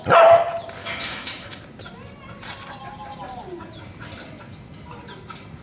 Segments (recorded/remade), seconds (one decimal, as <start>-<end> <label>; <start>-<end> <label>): 0.0-0.8 recorded; 0.8-1.6 remade; 1.6-5.6 recorded